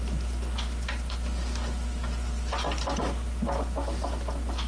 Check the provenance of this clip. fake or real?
real